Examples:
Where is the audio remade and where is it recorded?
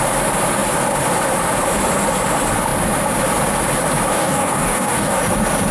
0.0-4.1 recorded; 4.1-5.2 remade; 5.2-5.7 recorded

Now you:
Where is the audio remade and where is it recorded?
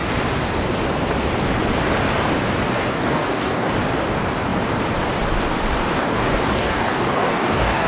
0.0-2.7 recorded; 2.7-3.7 remade; 3.7-6.0 recorded; 6.0-7.9 remade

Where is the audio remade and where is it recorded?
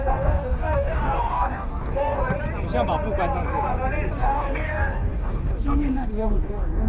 0.0-2.2 remade; 2.2-4.2 recorded; 4.2-6.9 remade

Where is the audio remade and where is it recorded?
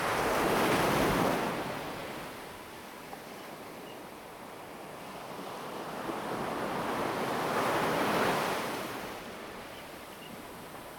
0.0-11.0 recorded